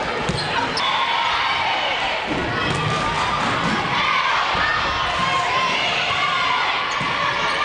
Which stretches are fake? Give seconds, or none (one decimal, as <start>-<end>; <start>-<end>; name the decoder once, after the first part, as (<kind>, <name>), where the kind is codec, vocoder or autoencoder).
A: none